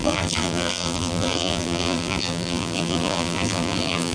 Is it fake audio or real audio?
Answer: fake